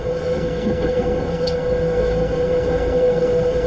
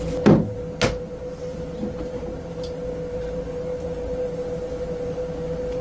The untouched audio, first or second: second